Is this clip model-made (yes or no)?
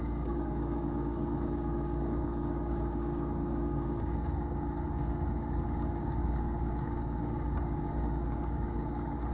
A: yes